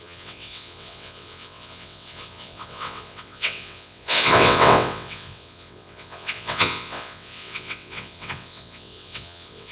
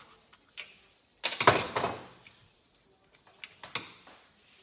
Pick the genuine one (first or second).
second